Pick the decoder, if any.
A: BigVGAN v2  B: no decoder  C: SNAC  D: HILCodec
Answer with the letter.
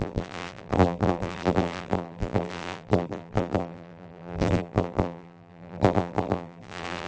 A